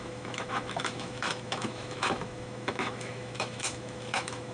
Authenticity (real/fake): fake